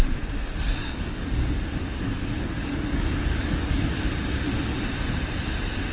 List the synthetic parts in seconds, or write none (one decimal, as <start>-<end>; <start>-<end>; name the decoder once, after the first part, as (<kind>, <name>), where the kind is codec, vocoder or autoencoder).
0.8-3.9 (codec, DAC)